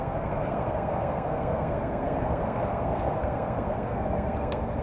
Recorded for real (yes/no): no